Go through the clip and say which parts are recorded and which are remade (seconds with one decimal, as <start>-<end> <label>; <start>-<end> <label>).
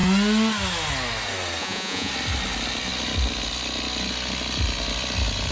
0.0-1.6 recorded; 1.6-2.1 remade; 2.1-5.5 recorded